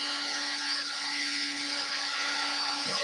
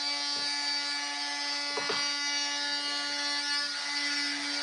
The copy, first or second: first